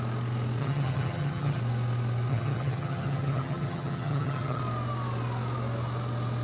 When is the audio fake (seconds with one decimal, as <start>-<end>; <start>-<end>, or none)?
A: 0.6-1.6; 2.3-4.6